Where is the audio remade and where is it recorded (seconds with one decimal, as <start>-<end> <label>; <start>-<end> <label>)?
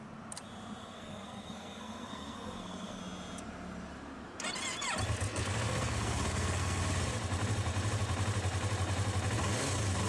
0.0-0.8 recorded; 0.8-3.0 remade; 3.0-5.3 recorded; 5.3-6.8 remade; 6.8-10.1 recorded